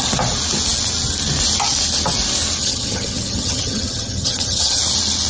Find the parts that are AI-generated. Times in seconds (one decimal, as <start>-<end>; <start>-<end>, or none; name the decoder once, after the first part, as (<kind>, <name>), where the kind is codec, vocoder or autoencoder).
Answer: 2.6-4.8 (vocoder, HiFi-GAN)